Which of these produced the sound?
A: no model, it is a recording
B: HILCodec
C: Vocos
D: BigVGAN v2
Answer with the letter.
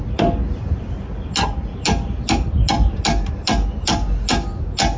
A